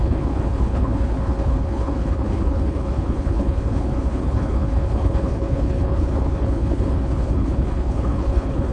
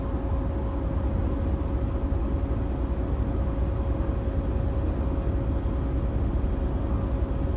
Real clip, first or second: second